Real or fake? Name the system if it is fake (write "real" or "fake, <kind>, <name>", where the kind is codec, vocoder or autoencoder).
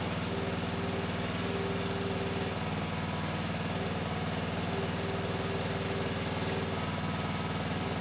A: real